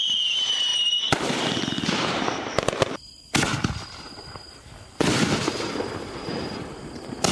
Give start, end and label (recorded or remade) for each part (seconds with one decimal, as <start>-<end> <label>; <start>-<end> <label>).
0.0-7.3 remade